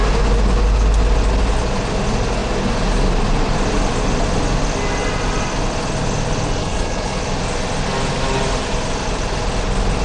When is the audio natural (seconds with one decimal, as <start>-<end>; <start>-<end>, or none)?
0.0-6.6; 7.2-10.0